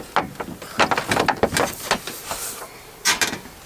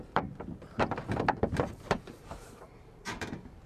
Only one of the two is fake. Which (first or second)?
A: second